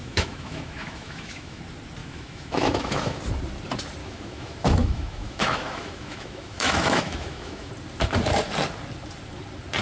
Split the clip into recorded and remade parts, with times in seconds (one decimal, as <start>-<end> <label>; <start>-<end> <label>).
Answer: 0.0-1.6 remade; 1.6-2.0 recorded; 2.0-3.2 remade; 3.2-4.0 recorded; 4.0-7.7 remade; 7.7-9.8 recorded

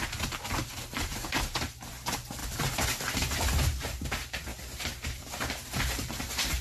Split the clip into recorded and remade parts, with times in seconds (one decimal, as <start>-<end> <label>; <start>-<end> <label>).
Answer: 0.0-4.5 recorded; 4.5-5.9 remade; 5.9-6.6 recorded

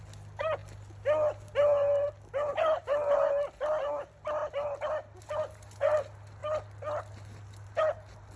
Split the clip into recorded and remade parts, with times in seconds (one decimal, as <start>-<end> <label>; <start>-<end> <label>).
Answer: 0.0-8.4 recorded